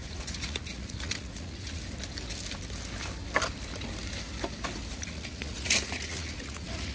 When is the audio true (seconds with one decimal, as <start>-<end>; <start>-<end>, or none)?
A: 1.8-4.9